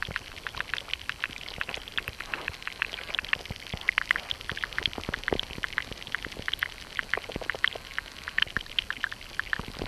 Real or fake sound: real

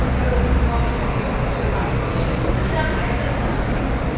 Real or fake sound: real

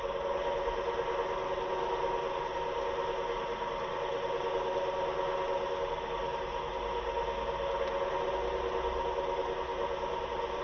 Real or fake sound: real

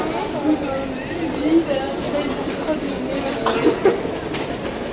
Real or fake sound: real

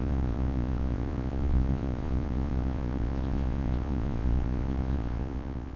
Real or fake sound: fake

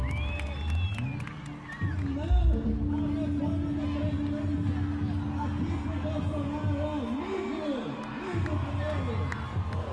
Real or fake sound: real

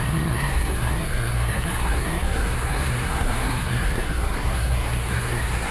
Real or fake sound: fake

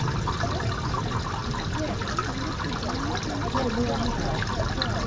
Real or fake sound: real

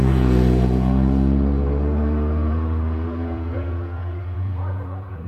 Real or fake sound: fake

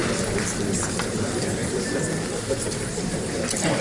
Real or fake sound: fake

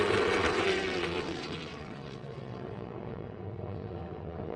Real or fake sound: fake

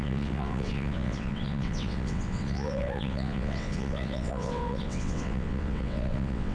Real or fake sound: fake